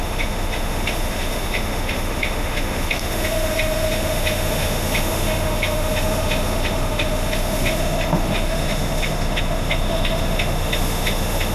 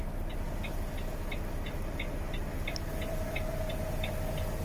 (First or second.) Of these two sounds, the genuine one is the second